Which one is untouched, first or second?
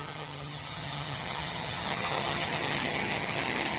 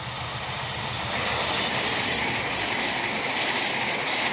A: second